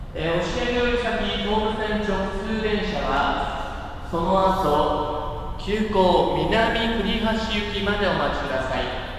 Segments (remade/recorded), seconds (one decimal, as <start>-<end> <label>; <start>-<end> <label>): 0.0-9.2 recorded